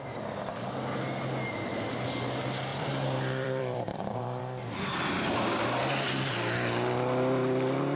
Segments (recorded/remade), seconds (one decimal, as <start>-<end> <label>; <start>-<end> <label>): 0.0-2.7 recorded; 2.7-4.4 remade; 4.4-8.0 recorded

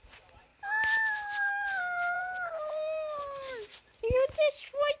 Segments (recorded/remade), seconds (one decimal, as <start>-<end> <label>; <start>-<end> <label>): 0.0-0.5 recorded; 0.5-3.5 remade; 3.5-5.0 recorded

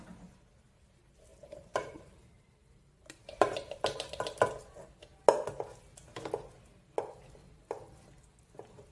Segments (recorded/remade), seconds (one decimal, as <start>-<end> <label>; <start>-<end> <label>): 0.0-1.3 recorded; 1.3-4.5 remade; 4.5-8.9 recorded

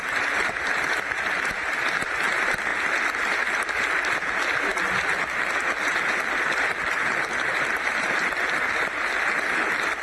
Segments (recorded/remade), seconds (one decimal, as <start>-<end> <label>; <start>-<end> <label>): 0.0-2.7 remade; 2.7-6.1 recorded; 6.1-10.0 remade